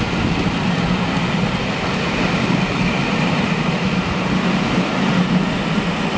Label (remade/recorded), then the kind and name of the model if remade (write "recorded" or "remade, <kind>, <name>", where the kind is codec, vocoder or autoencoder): recorded